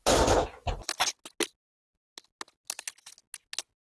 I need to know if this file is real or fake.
real